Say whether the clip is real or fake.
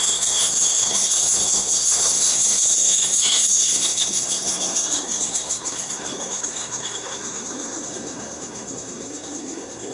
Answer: fake